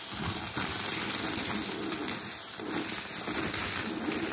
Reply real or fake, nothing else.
real